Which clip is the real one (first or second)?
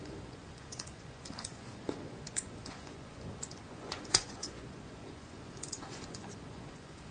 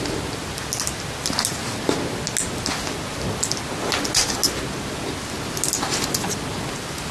second